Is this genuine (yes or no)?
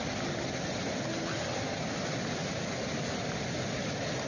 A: yes